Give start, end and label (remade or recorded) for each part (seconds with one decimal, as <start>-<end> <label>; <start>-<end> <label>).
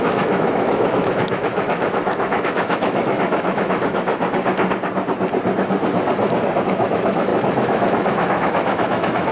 0.0-4.1 remade; 4.1-6.6 recorded; 6.6-9.3 remade